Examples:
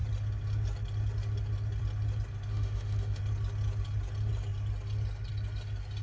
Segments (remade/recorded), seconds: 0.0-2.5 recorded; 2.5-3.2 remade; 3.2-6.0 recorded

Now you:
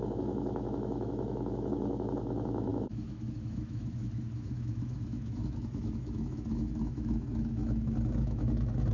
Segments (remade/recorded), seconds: 0.0-8.9 remade

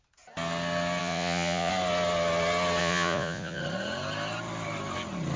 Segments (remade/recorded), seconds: 0.0-1.0 recorded; 1.0-1.7 remade; 1.7-2.8 recorded; 2.8-3.6 remade; 3.6-5.4 recorded

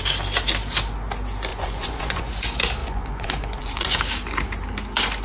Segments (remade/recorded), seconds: 0.0-1.5 recorded; 1.5-2.3 remade; 2.3-2.8 recorded; 2.8-4.0 remade; 4.0-5.2 recorded

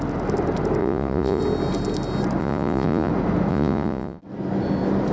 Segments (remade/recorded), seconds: 0.0-0.8 recorded; 0.8-1.4 remade; 1.4-2.4 recorded; 2.4-3.1 remade; 3.1-3.5 recorded; 3.5-4.2 remade; 4.2-5.1 recorded

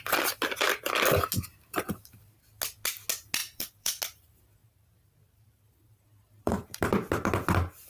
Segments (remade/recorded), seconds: 0.0-1.5 recorded; 1.5-2.4 remade; 2.4-3.4 recorded; 3.4-4.0 remade; 4.0-4.6 recorded; 4.6-6.8 remade; 6.8-7.9 recorded

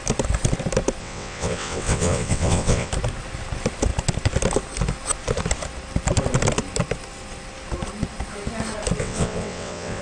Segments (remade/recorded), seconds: 0.0-1.0 recorded; 1.0-2.9 remade; 2.9-9.0 recorded; 9.0-10.0 remade